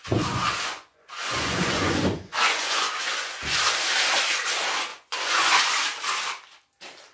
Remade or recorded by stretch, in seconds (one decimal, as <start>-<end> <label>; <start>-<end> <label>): 0.0-3.6 remade; 3.6-4.9 recorded; 4.9-5.6 remade; 5.6-7.1 recorded